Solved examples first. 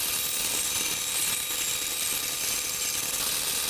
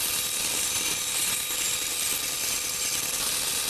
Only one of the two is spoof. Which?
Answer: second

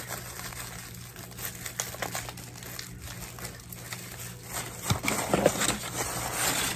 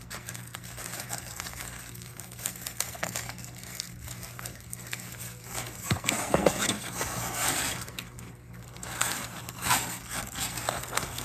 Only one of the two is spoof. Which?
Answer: second